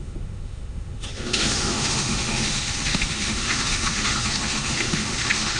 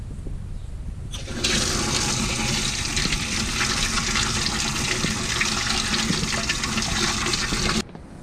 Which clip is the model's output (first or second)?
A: first